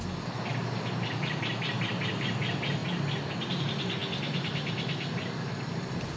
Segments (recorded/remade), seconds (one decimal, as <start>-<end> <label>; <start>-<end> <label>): 0.0-6.2 recorded